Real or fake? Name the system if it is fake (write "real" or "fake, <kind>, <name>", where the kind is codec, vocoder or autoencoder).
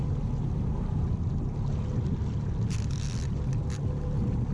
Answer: real